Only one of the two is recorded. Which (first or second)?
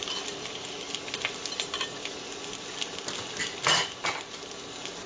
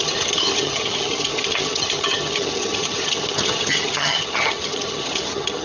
first